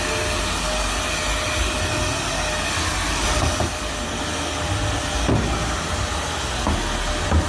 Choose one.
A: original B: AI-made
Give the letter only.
A